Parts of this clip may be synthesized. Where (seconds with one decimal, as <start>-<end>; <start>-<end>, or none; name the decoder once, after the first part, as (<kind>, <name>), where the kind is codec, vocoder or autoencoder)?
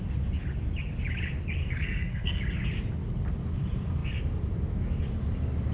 1.6-2.4 (codec, SNAC)